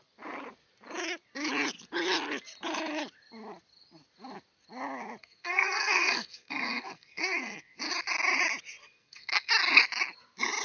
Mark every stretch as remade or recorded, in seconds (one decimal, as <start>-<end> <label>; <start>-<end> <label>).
0.0-5.2 recorded; 5.2-7.8 remade; 7.8-8.8 recorded; 8.8-9.5 remade; 9.5-10.6 recorded

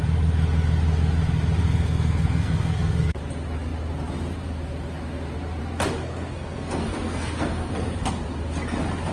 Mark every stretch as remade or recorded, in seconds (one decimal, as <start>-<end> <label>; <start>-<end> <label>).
0.0-1.6 recorded; 1.6-3.2 remade; 3.2-6.0 recorded; 6.0-8.1 remade; 8.1-9.1 recorded

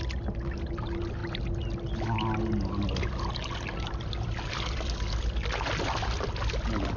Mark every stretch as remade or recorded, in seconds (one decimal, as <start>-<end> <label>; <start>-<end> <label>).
0.0-7.0 recorded

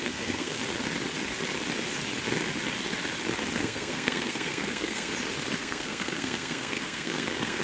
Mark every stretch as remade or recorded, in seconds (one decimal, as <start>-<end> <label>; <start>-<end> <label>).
0.0-0.6 remade; 0.6-3.6 recorded; 3.6-5.1 remade; 5.1-5.6 recorded; 5.6-7.6 remade

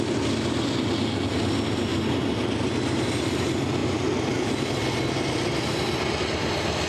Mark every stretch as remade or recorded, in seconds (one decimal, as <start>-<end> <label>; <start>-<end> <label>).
0.0-6.9 recorded

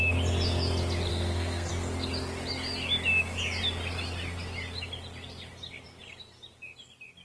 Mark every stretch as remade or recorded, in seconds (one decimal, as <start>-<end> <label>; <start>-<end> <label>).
0.0-1.1 recorded; 1.1-1.7 remade; 1.7-7.2 recorded

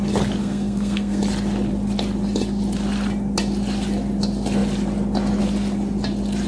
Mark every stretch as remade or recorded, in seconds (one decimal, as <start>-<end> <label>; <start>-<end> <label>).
0.0-0.4 recorded; 0.4-1.2 remade; 1.2-6.5 recorded

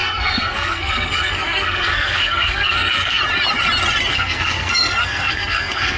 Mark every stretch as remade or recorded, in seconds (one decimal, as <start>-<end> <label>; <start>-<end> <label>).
0.0-3.2 remade; 3.2-4.1 recorded; 4.1-6.0 remade